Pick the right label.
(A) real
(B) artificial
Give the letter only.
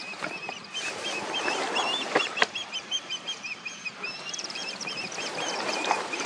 B